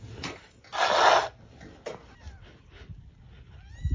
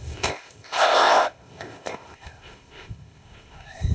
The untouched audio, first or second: first